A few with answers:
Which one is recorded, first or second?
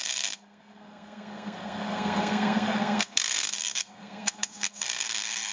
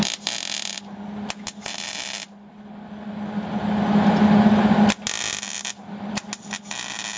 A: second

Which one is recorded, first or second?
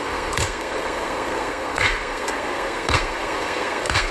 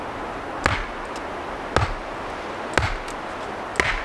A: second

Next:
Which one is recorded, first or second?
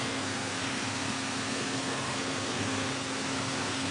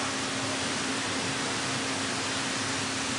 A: second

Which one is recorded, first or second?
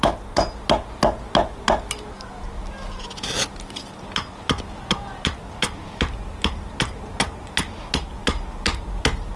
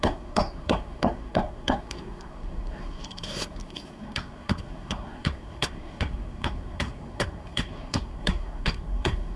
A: first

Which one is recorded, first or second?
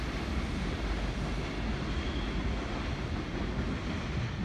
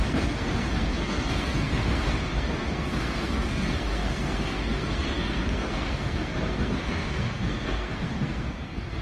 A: first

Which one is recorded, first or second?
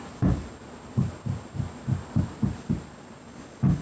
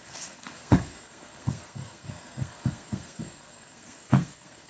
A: first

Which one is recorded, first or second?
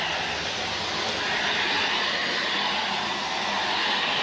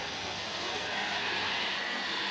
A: first